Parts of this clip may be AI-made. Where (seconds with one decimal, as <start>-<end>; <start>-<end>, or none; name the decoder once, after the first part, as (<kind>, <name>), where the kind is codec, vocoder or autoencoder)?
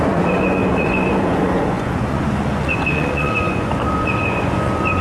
0.0-5.0 (vocoder, Vocos)